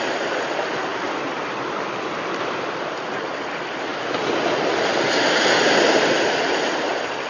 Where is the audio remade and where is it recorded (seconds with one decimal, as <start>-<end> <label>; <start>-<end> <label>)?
0.0-7.3 recorded